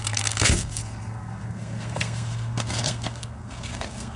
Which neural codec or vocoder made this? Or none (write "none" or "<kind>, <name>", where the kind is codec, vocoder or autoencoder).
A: codec, SNAC